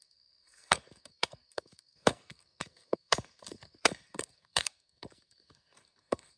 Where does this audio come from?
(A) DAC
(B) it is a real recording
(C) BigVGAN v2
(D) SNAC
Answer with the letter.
D